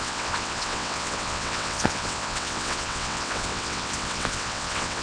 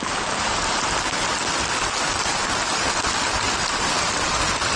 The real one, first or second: second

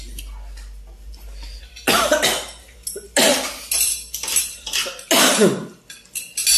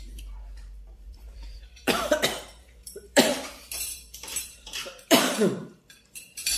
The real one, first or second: first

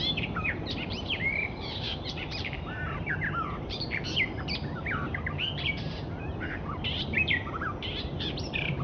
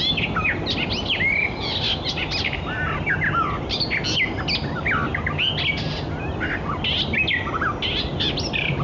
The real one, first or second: second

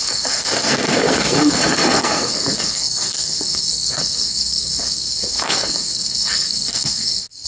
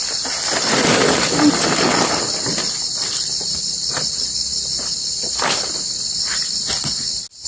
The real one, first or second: second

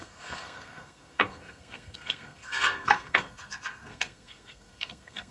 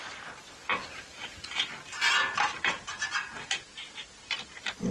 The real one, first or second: second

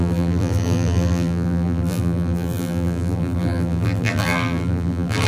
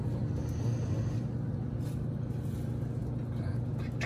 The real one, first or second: second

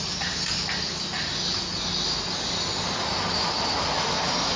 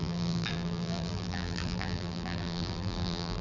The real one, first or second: first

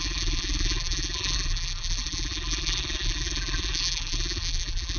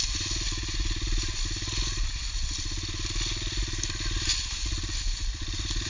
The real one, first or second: second